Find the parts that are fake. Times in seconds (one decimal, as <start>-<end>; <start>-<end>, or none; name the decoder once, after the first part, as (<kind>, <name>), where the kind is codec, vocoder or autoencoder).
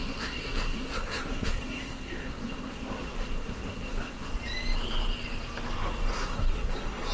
0.0-4.3 (codec, SNAC); 6.1-7.1